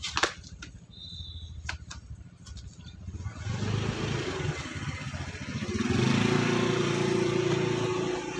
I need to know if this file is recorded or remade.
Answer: recorded